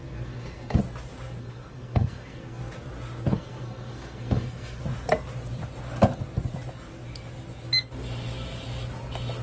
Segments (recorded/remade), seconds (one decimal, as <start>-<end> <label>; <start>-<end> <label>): 0.0-0.8 remade; 0.8-1.4 recorded; 1.4-2.6 remade; 2.6-3.3 recorded; 3.3-4.8 remade; 4.8-9.4 recorded